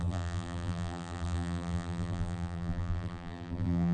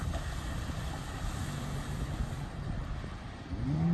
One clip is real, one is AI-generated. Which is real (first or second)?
second